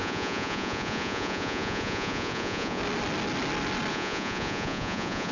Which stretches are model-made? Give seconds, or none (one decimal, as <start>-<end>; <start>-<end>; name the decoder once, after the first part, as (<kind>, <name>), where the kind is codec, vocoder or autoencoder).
0.0-2.8 (vocoder, Vocos); 3.9-5.3